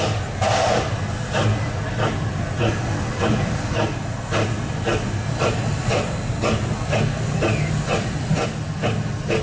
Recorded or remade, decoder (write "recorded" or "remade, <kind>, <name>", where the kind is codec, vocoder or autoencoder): recorded